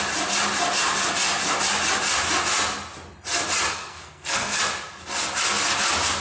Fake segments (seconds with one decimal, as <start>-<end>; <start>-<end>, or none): 3.7-4.6

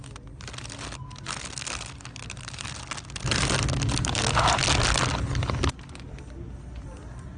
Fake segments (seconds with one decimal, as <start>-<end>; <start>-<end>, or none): none

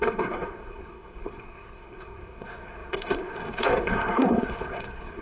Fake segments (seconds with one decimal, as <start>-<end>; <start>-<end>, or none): 0.0-5.2

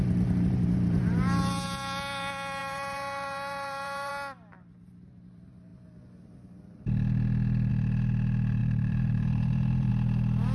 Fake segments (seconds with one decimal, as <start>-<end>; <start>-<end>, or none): 2.6-4.1; 8.6-9.9